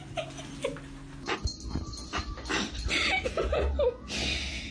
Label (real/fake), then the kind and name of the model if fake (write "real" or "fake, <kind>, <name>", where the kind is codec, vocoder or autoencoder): real